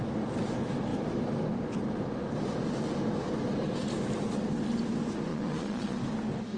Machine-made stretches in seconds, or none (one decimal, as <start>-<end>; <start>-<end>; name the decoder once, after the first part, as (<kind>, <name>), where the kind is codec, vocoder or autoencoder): 5.3-6.0 (vocoder, Vocos)